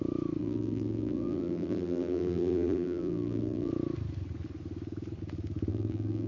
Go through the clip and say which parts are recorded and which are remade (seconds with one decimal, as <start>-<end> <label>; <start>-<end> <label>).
0.0-0.4 recorded; 0.4-3.7 remade; 3.7-5.7 recorded; 5.7-6.3 remade